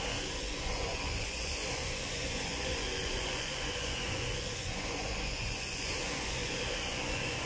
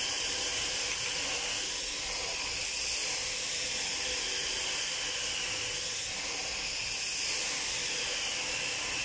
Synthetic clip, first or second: first